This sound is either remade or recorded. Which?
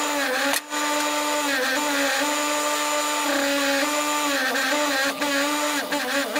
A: recorded